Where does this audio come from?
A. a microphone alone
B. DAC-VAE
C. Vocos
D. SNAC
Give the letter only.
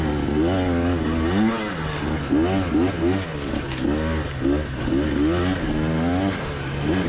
A